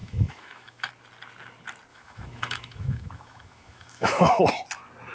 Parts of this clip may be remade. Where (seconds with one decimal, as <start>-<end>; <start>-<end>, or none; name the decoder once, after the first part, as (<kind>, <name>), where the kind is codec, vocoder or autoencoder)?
0.0-0.9 (autoencoder, DAC-VAE); 1.9-4.4